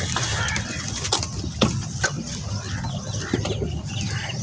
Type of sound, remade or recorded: recorded